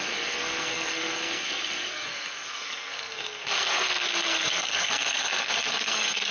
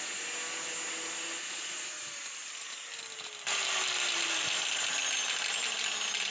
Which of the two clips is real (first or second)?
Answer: second